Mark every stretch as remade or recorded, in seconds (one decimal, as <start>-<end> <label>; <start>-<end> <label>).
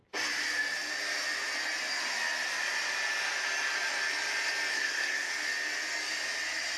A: 0.0-4.7 recorded; 4.7-5.3 remade; 5.3-6.8 recorded